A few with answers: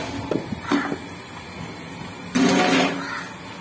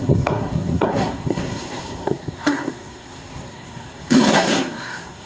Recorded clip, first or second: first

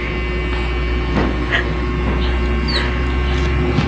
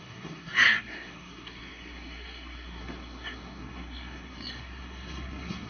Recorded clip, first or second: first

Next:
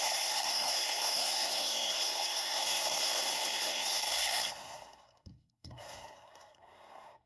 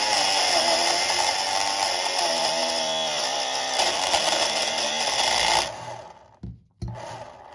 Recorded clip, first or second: second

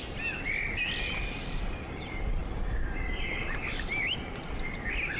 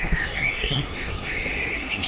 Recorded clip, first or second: first